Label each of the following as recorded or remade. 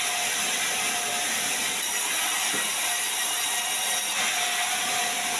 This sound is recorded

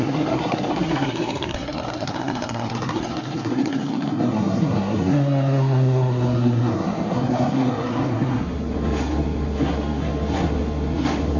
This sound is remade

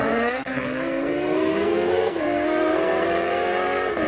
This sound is remade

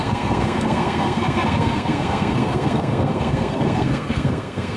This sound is remade